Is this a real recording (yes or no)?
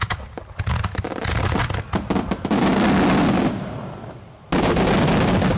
yes